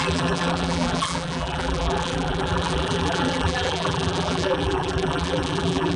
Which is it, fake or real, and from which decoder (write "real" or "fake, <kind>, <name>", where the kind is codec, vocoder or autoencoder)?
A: fake, vocoder, BigVGAN v2